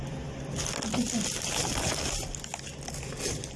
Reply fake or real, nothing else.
real